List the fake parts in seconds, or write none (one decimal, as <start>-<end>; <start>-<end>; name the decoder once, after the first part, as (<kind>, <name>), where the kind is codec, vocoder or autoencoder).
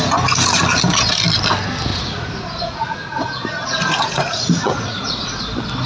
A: 1.9-5.4 (vocoder, Vocos)